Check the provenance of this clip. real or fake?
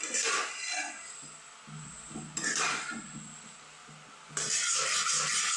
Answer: real